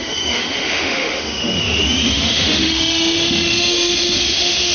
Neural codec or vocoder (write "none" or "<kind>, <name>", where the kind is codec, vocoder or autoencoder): autoencoder, DAC-VAE